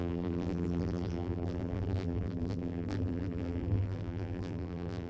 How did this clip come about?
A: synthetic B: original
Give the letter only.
A